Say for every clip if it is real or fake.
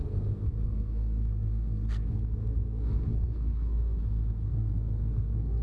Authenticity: fake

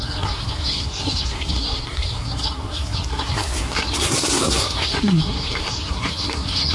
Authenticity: fake